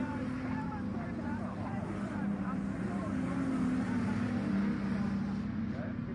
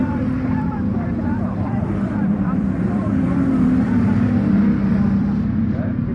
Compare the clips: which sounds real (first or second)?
first